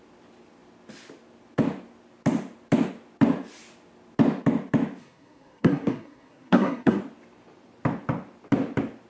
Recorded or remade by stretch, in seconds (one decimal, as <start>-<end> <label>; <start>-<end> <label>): 0.0-5.0 recorded; 5.0-7.0 remade; 7.0-9.1 recorded

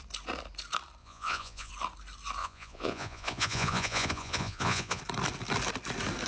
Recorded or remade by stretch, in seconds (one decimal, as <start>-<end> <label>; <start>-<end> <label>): 0.0-1.0 recorded; 1.0-1.7 remade; 1.7-2.4 recorded; 2.4-5.0 remade; 5.0-6.3 recorded

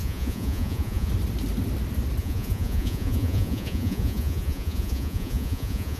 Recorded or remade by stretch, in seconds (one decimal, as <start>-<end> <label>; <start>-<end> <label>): 0.0-1.1 remade; 1.1-2.2 recorded; 2.2-6.0 remade

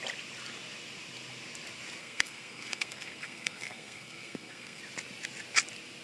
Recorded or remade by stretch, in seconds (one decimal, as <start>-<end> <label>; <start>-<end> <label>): 0.0-2.0 recorded; 2.0-4.8 remade; 4.8-6.0 recorded

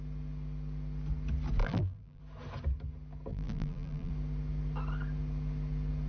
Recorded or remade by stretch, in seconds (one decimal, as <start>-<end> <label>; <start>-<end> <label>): 0.0-1.6 recorded; 1.6-2.2 remade; 2.2-3.3 recorded; 3.3-4.1 remade; 4.1-6.1 recorded

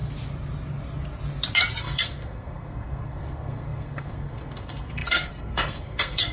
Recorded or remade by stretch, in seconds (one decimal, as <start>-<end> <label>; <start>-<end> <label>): 0.0-1.8 recorded; 1.8-6.3 remade

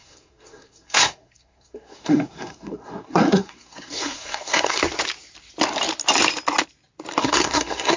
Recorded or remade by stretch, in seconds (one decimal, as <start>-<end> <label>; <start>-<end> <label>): 0.0-4.8 remade; 4.8-7.2 recorded; 7.2-8.0 remade

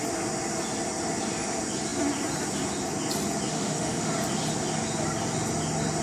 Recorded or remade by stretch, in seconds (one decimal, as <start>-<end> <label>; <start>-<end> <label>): 0.0-3.5 recorded; 3.5-4.1 remade; 4.1-6.0 recorded